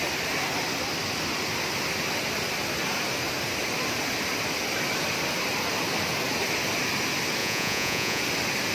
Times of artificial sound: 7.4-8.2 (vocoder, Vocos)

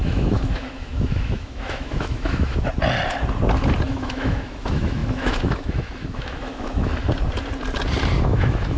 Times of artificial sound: 0.0-2.7 (autoencoder, DAC-VAE); 3.9-6.9; 8.2-8.8

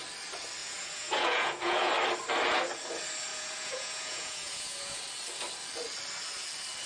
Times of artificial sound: 0.6-1.9 (vocoder, Vocos); 3.3-5.0

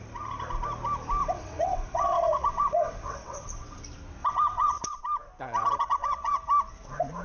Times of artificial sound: 1.2-3.8 (vocoder, WaveNeXt); 4.2-5.0; 5.6-6.4

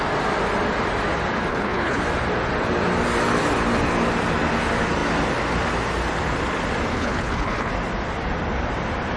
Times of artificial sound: 1.5-2.0 (codec, HILCodec); 6.9-7.7

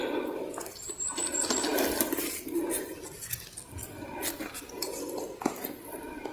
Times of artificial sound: none

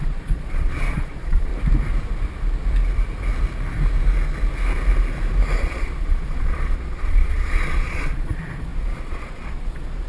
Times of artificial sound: 0.0-1.5 (vocoder, Vocos); 5.6-10.1